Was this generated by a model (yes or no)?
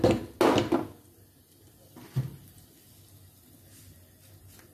no